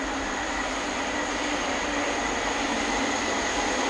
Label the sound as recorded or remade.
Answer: recorded